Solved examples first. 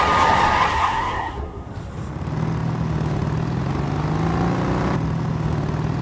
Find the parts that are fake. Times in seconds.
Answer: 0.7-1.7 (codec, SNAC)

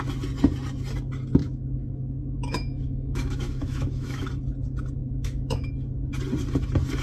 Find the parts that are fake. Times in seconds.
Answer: 1.4-4.3 (autoencoder, DAC-VAE); 5.0-5.7

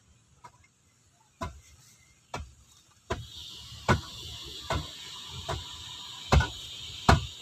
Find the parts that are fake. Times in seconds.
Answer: none

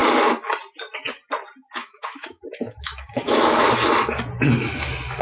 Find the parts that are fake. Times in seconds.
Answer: 1.8-3.7 (autoencoder, DAC-VAE)

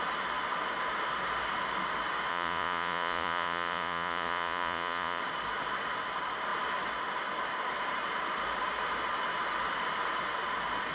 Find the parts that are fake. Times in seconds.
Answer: 2.3-5.2 (vocoder, Vocos)

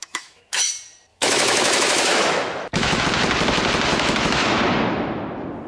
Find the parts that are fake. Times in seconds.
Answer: 0.0-0.7 (autoencoder, DAC-VAE); 1.1-3.0; 3.9-4.6

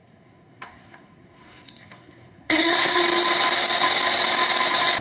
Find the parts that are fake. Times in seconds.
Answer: 0.0-3.0 (codec, SNAC)